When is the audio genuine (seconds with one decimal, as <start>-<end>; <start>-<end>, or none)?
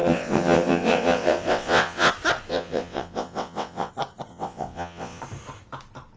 2.1-2.5; 3.9-4.3; 5.2-6.2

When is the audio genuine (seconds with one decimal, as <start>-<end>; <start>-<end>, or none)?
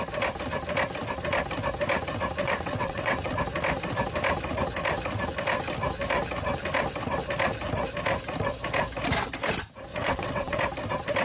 0.0-2.4; 3.3-9.9; 10.6-11.2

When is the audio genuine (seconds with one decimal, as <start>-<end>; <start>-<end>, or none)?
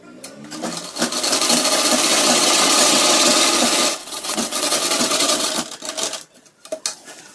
0.0-2.1; 3.4-4.0; 5.5-7.3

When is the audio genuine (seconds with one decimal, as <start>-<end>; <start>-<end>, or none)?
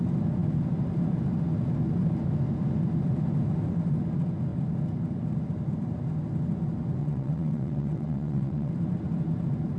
0.0-7.0; 8.7-9.8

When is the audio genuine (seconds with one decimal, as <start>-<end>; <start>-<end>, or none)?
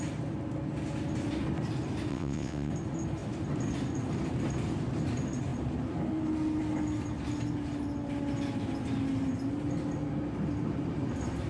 0.0-2.1; 2.7-11.5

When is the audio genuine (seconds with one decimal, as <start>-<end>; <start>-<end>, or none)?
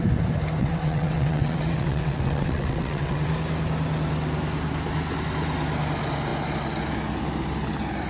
0.0-0.6; 3.3-8.1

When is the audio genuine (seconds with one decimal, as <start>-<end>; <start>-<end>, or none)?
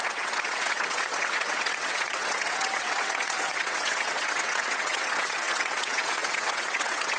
none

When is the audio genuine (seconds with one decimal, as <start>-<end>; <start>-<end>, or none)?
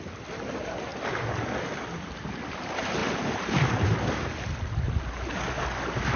0.0-6.2